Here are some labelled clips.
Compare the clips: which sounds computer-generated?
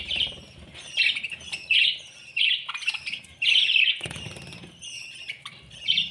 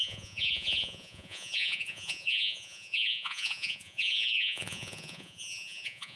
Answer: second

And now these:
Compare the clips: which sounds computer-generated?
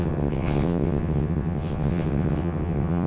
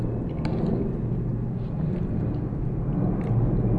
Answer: first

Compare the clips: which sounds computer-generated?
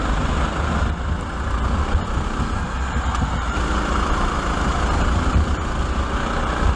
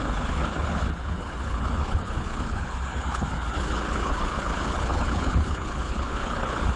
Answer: second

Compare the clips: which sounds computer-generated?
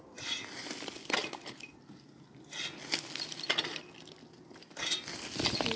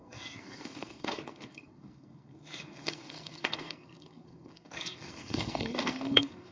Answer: second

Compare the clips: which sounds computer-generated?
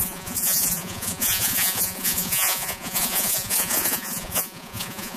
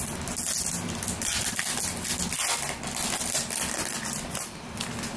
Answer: first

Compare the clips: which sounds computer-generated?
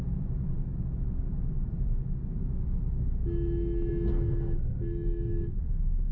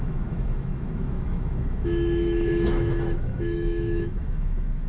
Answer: second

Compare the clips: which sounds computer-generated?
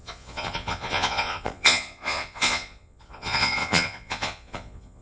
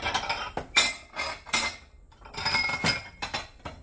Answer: first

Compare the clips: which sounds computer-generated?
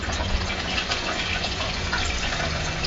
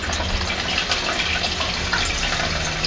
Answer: first